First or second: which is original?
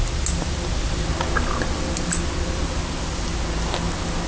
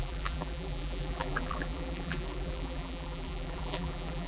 first